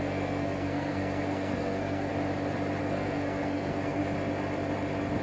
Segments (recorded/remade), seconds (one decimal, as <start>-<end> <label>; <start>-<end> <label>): 0.0-2.1 remade; 2.1-2.8 recorded; 2.8-4.0 remade; 4.0-5.2 recorded